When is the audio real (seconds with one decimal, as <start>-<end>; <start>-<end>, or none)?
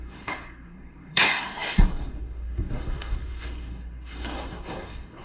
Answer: none